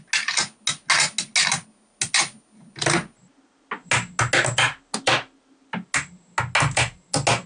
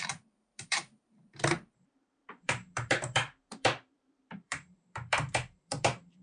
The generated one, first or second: second